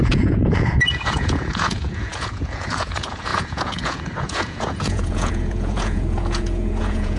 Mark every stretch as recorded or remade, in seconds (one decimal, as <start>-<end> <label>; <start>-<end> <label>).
0.0-7.2 remade